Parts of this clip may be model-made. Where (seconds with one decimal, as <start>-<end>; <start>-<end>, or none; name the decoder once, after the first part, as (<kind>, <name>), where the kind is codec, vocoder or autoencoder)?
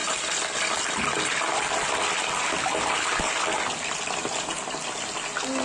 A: 0.0-3.4 (vocoder, BigVGAN v2)